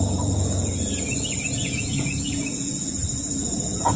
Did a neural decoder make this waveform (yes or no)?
yes